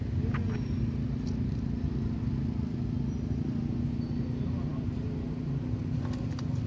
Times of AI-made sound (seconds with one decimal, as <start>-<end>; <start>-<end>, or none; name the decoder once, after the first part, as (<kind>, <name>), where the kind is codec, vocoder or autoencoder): none